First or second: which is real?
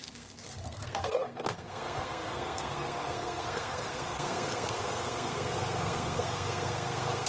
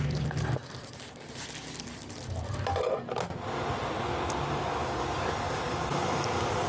second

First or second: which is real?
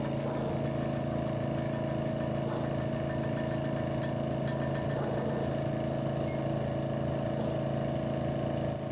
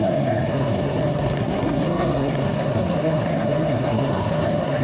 first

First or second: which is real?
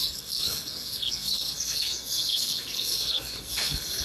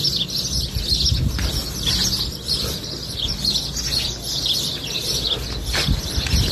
second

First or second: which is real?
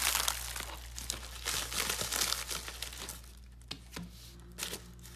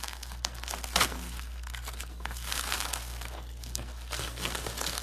first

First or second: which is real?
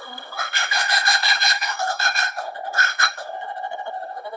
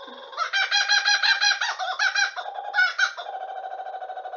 second